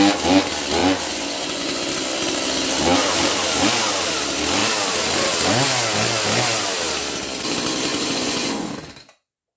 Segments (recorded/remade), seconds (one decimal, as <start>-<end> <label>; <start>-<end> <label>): 0.0-0.8 recorded; 0.8-1.9 remade; 1.9-7.9 recorded; 7.9-8.9 remade; 8.9-9.6 recorded